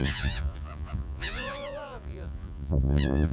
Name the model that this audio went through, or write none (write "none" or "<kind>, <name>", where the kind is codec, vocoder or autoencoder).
vocoder, Vocos